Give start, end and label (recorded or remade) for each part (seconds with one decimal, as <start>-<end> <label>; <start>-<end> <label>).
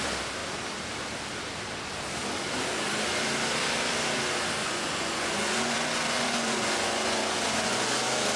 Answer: 0.0-4.6 recorded; 4.6-8.0 remade; 8.0-8.4 recorded